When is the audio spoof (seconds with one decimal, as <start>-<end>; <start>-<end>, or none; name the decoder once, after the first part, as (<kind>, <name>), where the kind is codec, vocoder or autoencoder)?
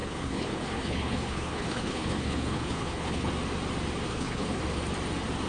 0.0-3.3 (codec, HILCodec); 4.1-4.6